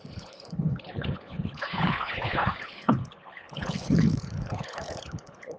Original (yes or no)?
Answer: no